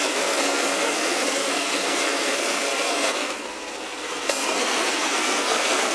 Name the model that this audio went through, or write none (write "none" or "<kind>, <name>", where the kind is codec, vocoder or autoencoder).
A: codec, SNAC